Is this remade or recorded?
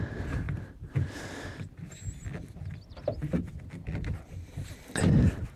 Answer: recorded